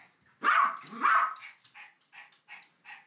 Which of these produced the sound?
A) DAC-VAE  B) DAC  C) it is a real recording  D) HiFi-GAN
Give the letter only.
C